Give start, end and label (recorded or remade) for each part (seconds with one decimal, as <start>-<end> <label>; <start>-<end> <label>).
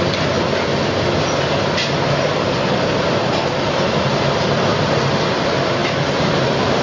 0.0-6.8 recorded